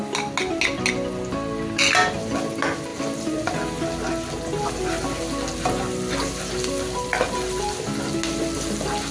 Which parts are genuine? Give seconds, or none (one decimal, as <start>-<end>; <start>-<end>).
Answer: 0.0-9.1